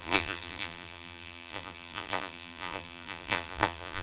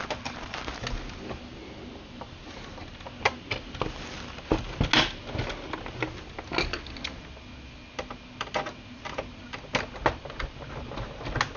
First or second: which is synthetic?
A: first